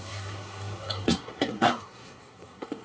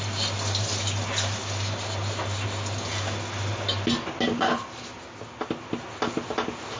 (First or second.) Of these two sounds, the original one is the second